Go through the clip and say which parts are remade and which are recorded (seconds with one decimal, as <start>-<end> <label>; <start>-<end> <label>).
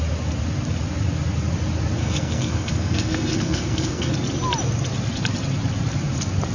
0.0-2.0 recorded; 2.0-4.1 remade; 4.1-6.5 recorded